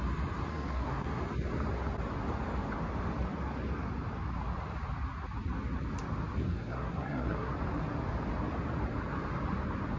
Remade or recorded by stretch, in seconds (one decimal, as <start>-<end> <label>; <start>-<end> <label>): 0.0-0.5 recorded; 0.5-1.2 remade; 1.2-6.4 recorded; 6.4-7.5 remade; 7.5-10.0 recorded

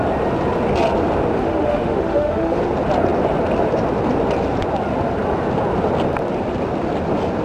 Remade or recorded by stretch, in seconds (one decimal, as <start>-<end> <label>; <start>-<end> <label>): 0.0-1.4 recorded; 1.4-2.6 remade; 2.6-7.4 recorded

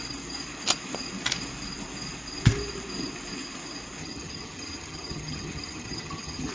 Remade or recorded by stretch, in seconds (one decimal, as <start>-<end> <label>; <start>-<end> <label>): 0.0-4.0 recorded; 4.0-6.5 remade

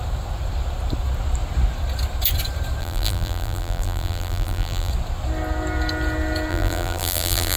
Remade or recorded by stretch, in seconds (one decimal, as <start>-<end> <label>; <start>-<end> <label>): 0.0-2.8 recorded; 2.8-4.9 remade; 4.9-6.5 recorded; 6.5-7.6 remade

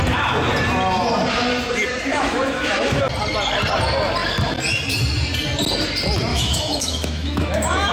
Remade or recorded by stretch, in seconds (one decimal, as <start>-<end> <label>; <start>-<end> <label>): 0.0-2.1 recorded; 2.1-3.0 remade; 3.0-6.3 recorded; 6.3-7.9 remade